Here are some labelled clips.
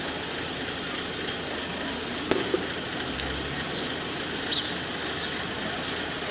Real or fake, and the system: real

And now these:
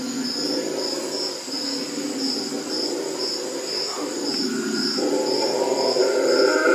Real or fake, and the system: real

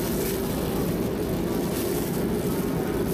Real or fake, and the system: real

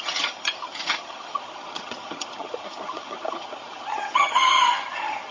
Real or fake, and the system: fake, vocoder, HiFi-GAN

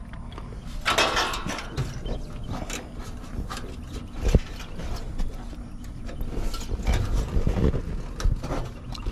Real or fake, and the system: real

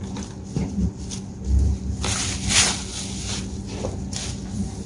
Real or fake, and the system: real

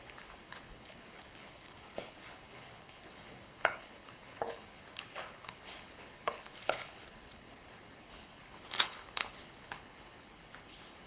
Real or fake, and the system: fake, codec, HILCodec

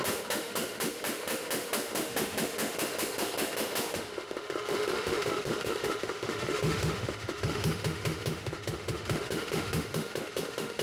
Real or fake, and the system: fake, autoencoder, DAC-VAE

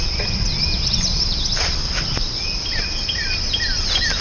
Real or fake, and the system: real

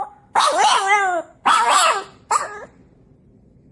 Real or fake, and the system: real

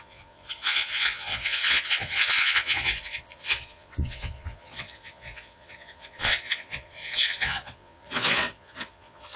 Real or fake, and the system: fake, vocoder, Vocos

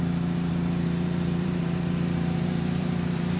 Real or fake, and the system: fake, vocoder, BigVGAN v2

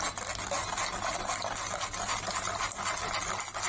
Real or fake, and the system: real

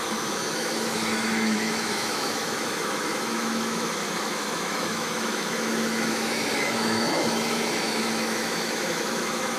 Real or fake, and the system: fake, autoencoder, DAC-VAE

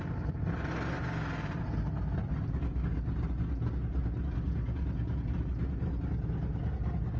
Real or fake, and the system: real